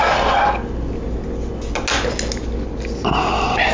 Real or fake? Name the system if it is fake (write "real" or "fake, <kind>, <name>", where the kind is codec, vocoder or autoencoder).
real